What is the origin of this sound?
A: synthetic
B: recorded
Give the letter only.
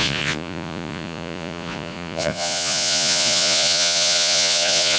A